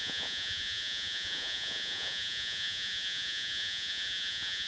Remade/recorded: remade